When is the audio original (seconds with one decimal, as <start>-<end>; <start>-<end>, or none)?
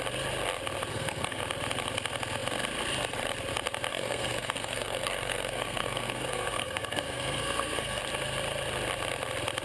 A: 0.0-0.9; 1.4-3.9; 8.0-9.6